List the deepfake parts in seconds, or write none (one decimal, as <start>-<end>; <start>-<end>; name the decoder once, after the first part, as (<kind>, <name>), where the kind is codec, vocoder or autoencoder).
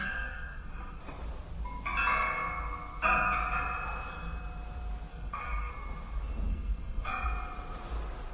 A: 0.0-1.0 (codec, SNAC); 5.1-5.7; 6.5-7.1